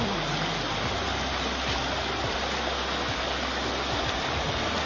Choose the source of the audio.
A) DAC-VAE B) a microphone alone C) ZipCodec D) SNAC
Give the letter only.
B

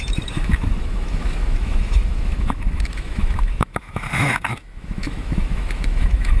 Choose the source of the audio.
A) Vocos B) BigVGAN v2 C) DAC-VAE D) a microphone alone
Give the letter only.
C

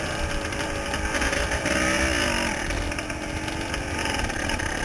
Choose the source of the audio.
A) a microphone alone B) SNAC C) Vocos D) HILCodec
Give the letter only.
A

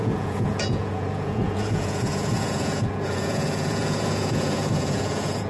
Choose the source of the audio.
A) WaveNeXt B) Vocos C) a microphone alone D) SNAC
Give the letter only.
B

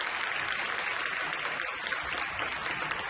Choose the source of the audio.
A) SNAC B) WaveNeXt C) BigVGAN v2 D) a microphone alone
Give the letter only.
D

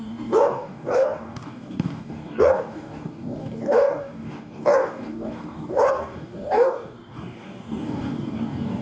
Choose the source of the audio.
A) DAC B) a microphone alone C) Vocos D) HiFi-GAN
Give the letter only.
A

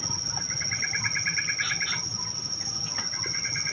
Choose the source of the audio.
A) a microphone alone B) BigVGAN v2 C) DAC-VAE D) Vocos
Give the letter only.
A